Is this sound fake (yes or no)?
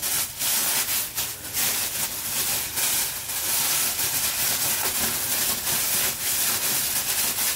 no